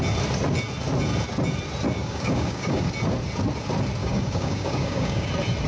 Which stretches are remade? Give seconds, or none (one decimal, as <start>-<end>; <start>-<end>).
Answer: 2.0-2.9; 4.0-5.3